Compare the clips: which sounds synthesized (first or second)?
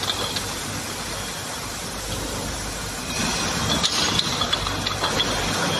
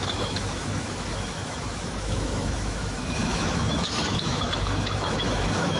second